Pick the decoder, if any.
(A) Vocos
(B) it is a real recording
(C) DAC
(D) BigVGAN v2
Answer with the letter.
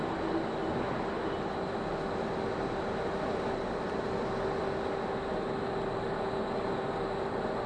B